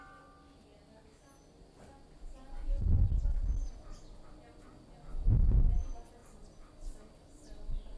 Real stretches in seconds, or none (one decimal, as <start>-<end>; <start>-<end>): 0.0-8.0